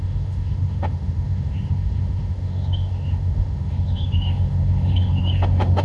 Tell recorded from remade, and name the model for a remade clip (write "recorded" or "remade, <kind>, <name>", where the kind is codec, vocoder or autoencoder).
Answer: remade, autoencoder, DAC-VAE